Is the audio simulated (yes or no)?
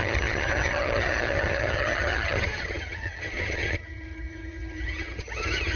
yes